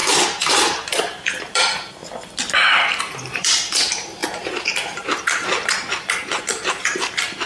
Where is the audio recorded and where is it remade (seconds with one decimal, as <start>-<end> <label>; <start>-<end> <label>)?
0.0-2.0 remade; 2.0-3.0 recorded; 3.0-7.5 remade